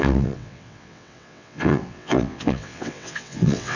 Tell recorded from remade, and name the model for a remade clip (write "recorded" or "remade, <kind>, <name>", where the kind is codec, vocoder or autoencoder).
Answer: remade, vocoder, WaveNeXt